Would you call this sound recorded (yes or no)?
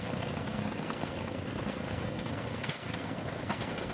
no